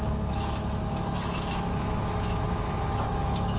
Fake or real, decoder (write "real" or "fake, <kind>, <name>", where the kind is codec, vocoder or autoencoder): fake, autoencoder, DAC-VAE